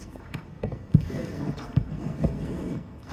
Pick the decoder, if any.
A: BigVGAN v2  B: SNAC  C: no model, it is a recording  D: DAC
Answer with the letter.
B